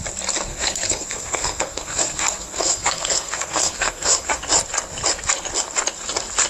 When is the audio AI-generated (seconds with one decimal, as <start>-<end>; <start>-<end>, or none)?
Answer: 0.5-4.4